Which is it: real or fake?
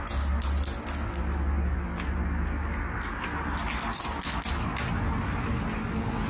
real